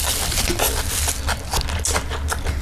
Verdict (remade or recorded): recorded